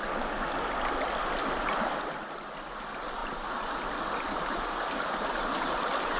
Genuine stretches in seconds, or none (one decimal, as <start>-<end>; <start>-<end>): 0.0-6.2